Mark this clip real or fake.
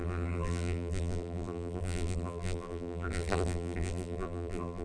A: fake